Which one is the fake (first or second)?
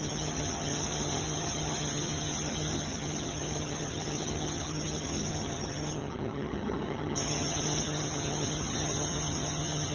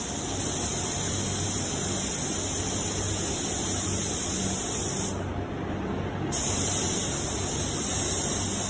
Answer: first